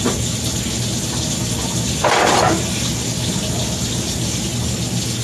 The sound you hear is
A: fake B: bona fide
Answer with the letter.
B